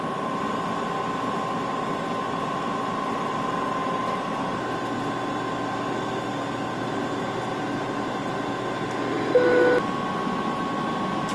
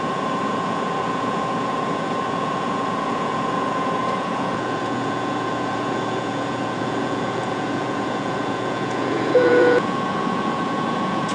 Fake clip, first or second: second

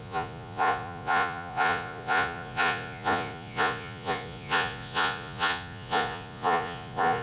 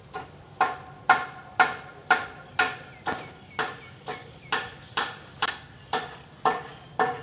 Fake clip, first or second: first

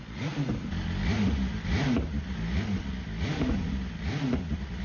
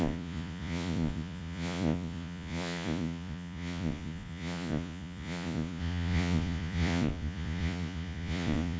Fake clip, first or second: second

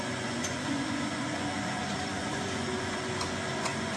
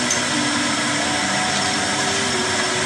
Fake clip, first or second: first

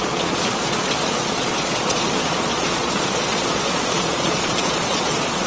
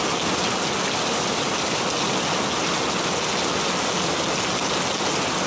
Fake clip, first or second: first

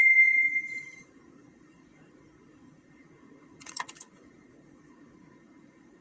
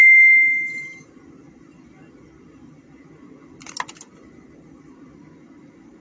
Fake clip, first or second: first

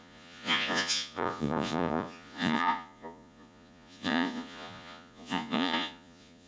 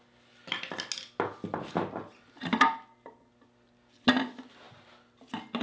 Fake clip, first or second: first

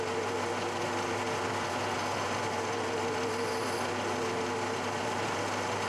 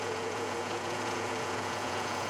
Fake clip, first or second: second